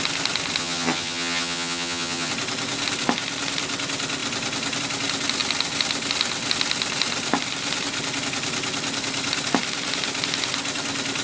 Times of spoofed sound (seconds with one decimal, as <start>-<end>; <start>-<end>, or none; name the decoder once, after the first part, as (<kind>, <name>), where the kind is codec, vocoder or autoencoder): 0.6-2.3 (vocoder, HiFi-GAN)